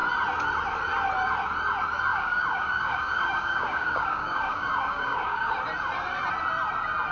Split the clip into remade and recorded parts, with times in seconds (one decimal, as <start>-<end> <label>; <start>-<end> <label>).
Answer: 0.0-2.1 recorded; 2.1-5.5 remade; 5.5-7.1 recorded